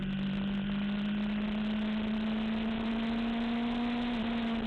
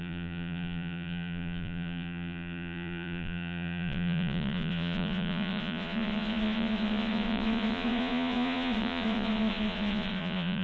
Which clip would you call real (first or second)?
first